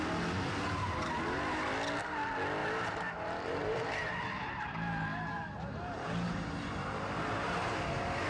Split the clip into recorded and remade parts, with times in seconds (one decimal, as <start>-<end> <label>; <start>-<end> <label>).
0.0-2.6 recorded; 2.6-4.1 remade; 4.1-6.3 recorded; 6.3-8.3 remade